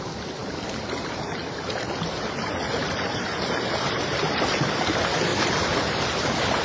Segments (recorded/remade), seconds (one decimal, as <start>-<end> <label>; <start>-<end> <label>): 0.0-5.3 recorded; 5.3-6.6 remade